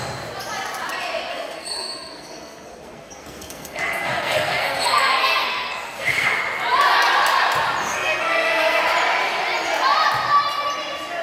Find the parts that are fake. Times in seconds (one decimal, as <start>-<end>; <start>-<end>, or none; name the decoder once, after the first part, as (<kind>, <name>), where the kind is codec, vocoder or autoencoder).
1.3-6.4 (codec, SNAC); 7.8-8.8